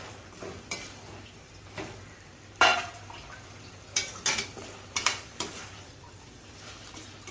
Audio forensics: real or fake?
fake